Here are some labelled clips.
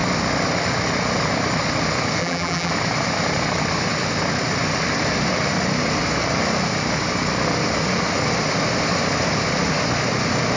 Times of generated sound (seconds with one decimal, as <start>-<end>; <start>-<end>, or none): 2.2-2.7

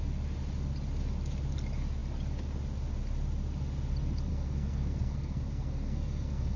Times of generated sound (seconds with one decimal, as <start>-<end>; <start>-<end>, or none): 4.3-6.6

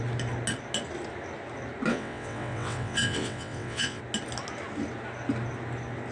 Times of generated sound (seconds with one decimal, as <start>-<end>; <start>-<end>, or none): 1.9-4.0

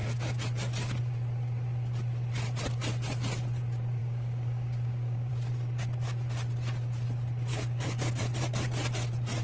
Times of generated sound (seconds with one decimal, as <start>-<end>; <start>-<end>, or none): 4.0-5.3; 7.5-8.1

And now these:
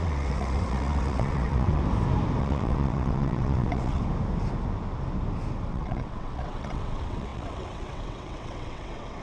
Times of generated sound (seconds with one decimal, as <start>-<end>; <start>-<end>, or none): 0.0-1.8; 2.4-4.0; 5.7-9.2

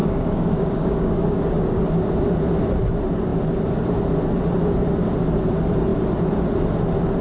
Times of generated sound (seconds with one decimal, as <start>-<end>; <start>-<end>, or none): 0.0-1.8

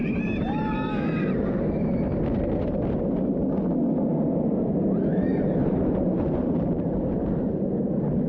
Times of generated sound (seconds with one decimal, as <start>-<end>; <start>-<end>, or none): 0.0-2.2; 5.3-7.6

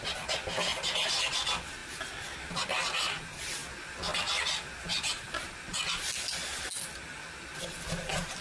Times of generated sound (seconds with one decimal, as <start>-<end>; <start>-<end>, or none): none